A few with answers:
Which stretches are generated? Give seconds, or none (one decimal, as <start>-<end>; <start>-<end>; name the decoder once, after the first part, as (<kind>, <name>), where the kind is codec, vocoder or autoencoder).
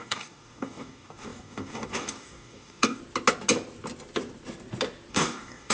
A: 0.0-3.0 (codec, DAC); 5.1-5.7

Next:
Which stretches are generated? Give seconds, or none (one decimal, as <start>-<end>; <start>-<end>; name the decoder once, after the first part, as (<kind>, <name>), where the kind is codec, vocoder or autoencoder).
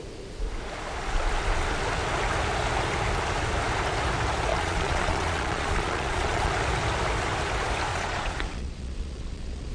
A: 4.5-6.5 (vocoder, Vocos); 7.9-9.7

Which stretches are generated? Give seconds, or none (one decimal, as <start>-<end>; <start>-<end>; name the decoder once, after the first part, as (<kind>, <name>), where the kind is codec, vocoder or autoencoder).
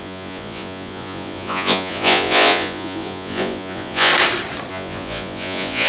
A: 0.0-4.1 (vocoder, Vocos); 4.7-5.9